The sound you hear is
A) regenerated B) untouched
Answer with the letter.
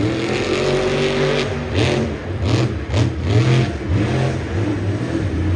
B